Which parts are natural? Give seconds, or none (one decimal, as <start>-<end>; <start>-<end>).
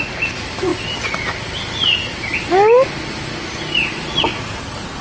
0.0-5.0